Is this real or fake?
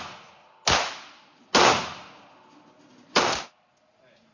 real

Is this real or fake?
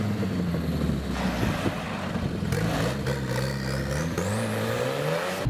real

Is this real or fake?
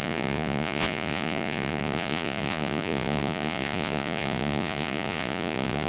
fake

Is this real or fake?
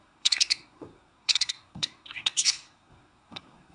fake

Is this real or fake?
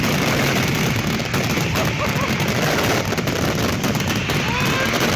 real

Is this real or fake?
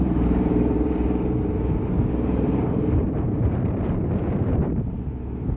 fake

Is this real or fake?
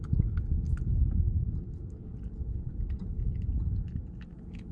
real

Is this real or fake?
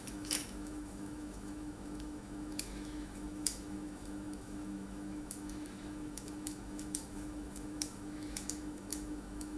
fake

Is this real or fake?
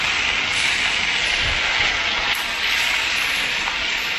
real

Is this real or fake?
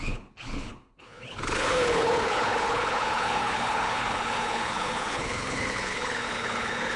fake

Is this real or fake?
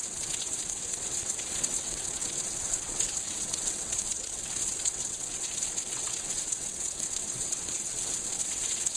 fake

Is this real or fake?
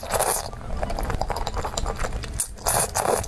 real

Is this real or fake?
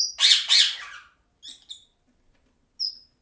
real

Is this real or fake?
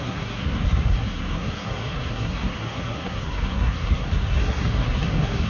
fake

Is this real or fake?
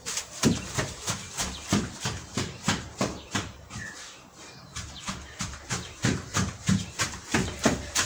fake